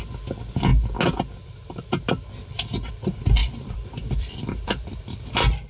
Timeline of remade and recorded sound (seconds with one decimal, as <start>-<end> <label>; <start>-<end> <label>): 0.0-3.4 recorded; 3.4-5.0 remade; 5.0-5.7 recorded